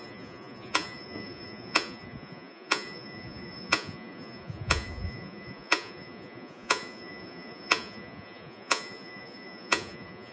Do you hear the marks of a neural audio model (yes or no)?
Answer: yes